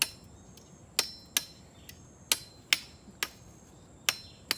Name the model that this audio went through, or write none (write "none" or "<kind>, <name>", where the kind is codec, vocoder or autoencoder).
none